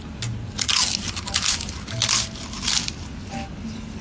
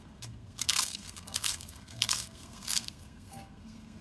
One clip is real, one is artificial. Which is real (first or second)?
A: first